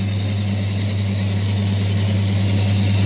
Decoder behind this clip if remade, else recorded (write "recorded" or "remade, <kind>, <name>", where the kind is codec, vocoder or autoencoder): recorded